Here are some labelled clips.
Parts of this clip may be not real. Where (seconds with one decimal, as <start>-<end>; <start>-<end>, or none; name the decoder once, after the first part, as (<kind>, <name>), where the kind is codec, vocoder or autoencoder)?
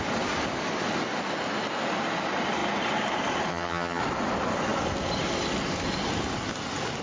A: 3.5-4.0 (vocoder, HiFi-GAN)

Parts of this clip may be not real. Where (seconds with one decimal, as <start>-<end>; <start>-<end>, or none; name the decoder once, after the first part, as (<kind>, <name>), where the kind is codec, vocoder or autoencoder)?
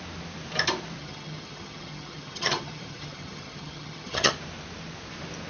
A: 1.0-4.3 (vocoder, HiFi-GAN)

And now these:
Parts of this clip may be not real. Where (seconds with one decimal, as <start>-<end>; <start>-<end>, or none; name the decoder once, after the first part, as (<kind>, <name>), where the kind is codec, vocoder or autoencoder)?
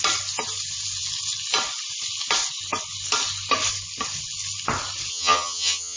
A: 5.1-6.0 (vocoder, HiFi-GAN)